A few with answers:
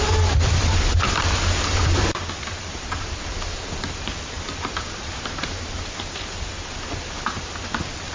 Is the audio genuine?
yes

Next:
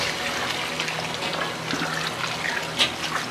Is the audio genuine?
yes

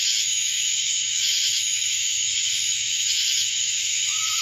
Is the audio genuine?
no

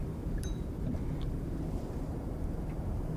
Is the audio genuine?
no